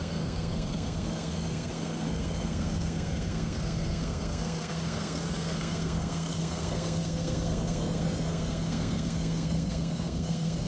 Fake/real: fake